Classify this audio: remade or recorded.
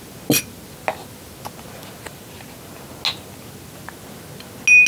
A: recorded